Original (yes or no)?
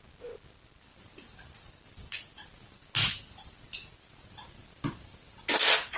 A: yes